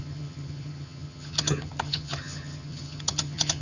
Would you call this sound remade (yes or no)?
yes